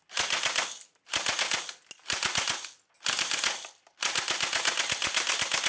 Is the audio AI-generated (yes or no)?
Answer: no